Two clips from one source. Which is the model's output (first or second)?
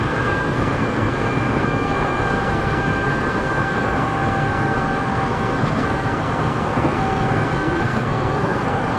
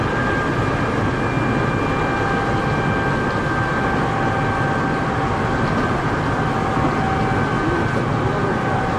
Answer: first